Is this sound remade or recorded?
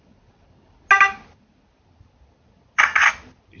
recorded